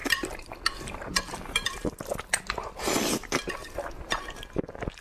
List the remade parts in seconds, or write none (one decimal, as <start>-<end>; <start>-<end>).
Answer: none